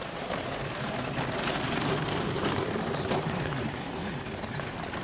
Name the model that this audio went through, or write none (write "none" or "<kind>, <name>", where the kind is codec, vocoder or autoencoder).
vocoder, BigVGAN v2